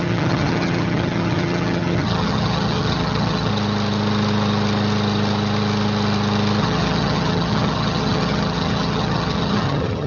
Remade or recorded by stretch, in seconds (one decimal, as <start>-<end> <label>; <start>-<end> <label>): 0.0-3.5 remade; 3.5-6.6 recorded; 6.6-10.1 remade